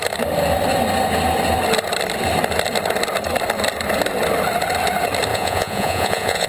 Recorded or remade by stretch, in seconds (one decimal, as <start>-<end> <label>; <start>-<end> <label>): 0.0-5.3 recorded; 5.3-6.5 remade